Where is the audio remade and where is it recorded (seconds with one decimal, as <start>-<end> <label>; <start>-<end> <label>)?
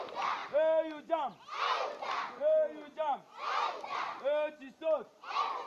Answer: 0.0-5.7 recorded